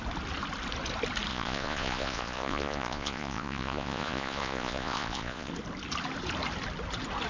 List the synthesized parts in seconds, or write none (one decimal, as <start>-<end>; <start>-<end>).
1.3-5.5